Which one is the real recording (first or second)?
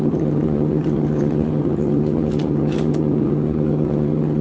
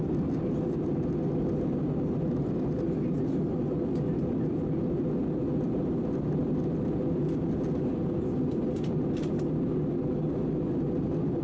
second